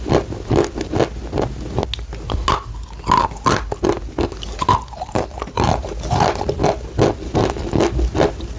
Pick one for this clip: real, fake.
real